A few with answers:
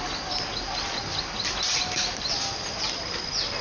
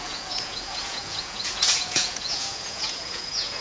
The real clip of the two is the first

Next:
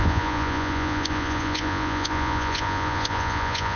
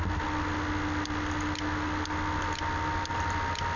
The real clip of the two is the second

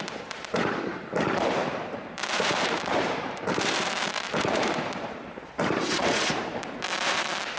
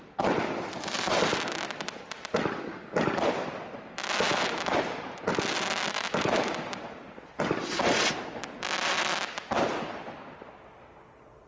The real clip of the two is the second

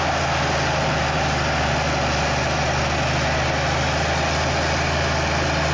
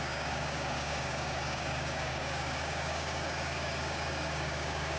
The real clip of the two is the first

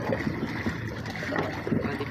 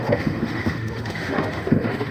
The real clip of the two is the first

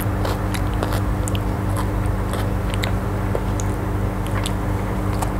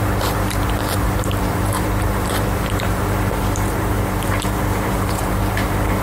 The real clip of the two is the first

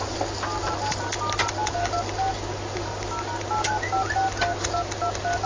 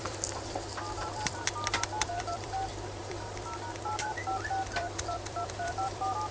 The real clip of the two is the first